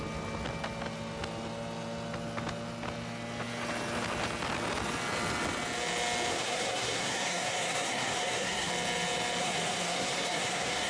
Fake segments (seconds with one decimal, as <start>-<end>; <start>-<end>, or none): 6.3-8.7; 9.4-10.9